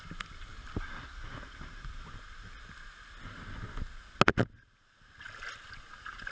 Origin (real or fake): real